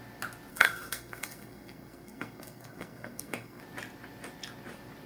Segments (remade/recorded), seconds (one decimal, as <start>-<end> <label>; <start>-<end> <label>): 0.0-0.5 recorded; 0.5-3.6 remade; 3.6-5.1 recorded